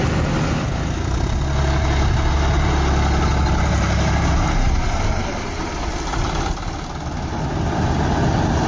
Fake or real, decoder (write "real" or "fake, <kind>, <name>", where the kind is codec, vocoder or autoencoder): real